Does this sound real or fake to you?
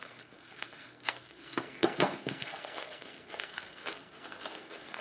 fake